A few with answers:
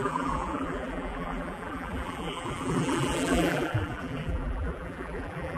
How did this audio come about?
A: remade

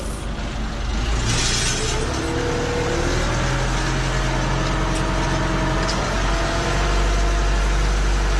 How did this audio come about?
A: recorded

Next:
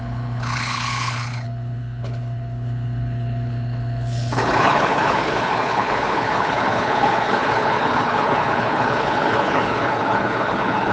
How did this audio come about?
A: remade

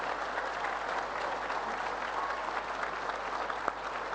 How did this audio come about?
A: recorded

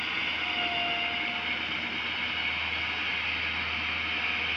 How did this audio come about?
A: recorded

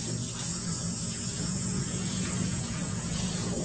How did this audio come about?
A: remade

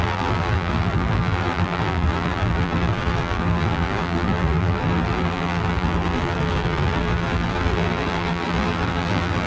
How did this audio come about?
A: remade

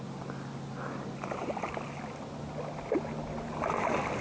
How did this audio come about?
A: recorded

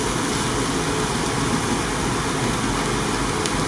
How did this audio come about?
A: recorded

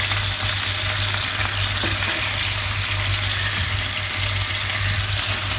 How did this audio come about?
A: recorded